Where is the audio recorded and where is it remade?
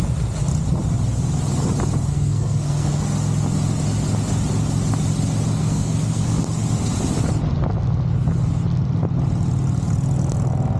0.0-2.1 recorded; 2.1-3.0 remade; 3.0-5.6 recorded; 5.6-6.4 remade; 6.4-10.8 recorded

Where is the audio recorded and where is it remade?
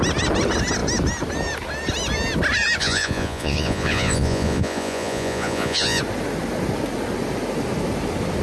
0.0-2.8 recorded; 2.8-6.0 remade; 6.0-8.4 recorded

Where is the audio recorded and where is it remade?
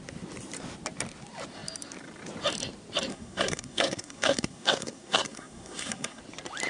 0.0-3.1 recorded; 3.1-6.2 remade; 6.2-6.7 recorded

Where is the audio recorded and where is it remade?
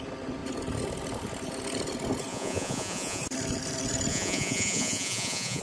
0.0-2.3 recorded; 2.3-3.2 remade; 3.2-4.1 recorded; 4.1-5.6 remade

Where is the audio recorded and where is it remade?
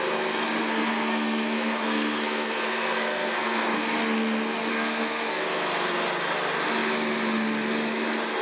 0.0-0.6 recorded; 0.6-3.8 remade; 3.8-4.7 recorded; 4.7-5.4 remade; 5.4-8.4 recorded